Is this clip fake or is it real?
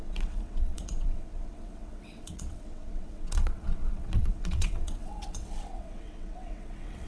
fake